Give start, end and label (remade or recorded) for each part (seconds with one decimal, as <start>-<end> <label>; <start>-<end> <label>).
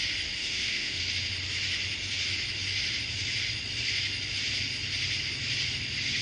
0.0-0.4 recorded; 0.4-1.0 remade; 1.0-6.2 recorded